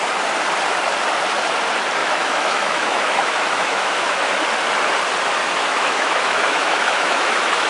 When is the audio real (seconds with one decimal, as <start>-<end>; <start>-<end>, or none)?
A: 0.0-2.0; 4.4-5.6